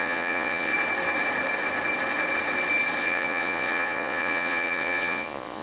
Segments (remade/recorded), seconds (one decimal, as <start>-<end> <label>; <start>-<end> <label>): 0.0-0.7 remade; 0.7-3.0 recorded; 3.0-5.6 remade